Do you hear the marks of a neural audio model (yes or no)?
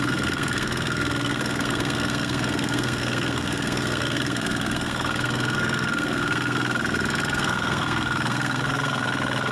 yes